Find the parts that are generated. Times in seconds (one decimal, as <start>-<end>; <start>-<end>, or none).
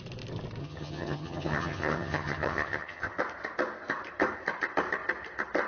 0.6-3.2